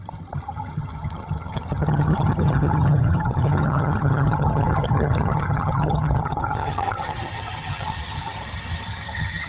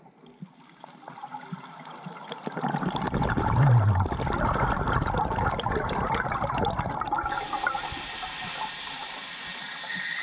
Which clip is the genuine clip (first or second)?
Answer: second